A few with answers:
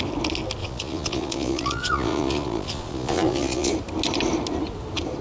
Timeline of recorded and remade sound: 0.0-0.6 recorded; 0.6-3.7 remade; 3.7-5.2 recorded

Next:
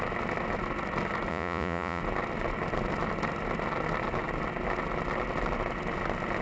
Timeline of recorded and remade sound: 0.0-1.3 recorded; 1.3-2.0 remade; 2.0-6.4 recorded

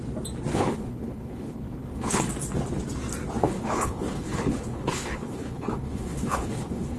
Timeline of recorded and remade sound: 0.0-0.5 recorded; 0.5-2.2 remade; 2.2-3.4 recorded; 3.4-7.0 remade

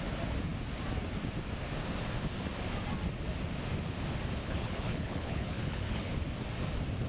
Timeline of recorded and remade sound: 0.0-4.4 recorded; 4.4-6.1 remade; 6.1-7.1 recorded

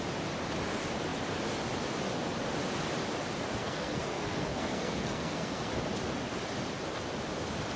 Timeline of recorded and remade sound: 0.0-3.6 recorded; 3.6-5.7 remade; 5.7-7.8 recorded

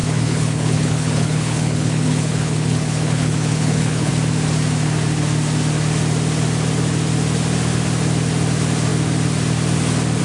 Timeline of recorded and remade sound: 0.0-4.1 remade; 4.1-10.2 recorded